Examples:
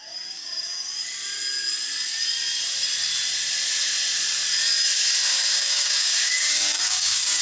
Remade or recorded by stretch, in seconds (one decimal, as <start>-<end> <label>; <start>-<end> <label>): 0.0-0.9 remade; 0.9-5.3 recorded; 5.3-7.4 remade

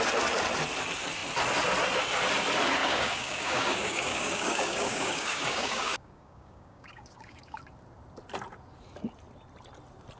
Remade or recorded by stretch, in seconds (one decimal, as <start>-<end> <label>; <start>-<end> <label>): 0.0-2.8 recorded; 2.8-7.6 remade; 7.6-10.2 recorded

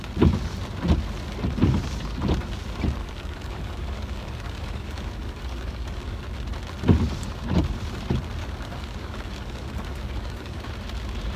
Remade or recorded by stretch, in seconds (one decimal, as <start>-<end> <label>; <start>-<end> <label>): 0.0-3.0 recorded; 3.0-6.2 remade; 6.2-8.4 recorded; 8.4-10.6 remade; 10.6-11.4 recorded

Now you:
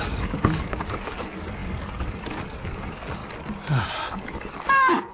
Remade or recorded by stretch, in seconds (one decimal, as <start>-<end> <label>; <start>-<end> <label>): 0.0-3.2 remade; 3.2-4.1 recorded; 4.1-5.1 remade